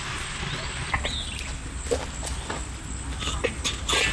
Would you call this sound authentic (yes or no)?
yes